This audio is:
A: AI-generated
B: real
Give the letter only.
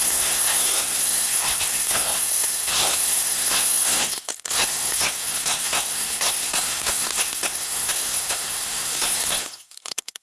A